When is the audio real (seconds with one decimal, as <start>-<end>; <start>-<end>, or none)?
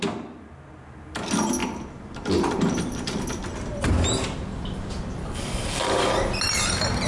0.0-5.2; 6.1-7.1